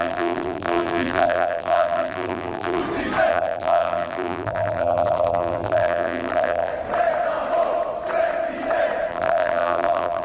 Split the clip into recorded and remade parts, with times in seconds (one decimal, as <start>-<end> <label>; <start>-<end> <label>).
0.0-2.8 remade; 2.8-3.3 recorded; 3.3-6.7 remade; 6.7-9.1 recorded; 9.1-10.2 remade